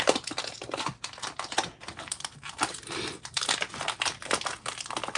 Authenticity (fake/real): real